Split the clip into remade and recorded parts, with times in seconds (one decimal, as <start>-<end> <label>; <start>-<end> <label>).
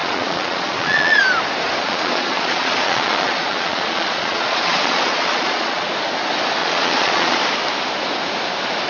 0.0-1.2 remade; 1.2-1.8 recorded; 1.8-5.9 remade; 5.9-6.6 recorded; 6.6-7.4 remade; 7.4-8.9 recorded